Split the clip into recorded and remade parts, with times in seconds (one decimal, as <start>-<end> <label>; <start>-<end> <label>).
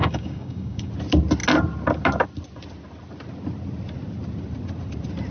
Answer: 0.0-0.9 remade; 0.9-5.3 recorded